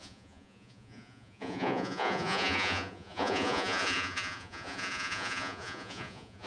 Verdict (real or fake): fake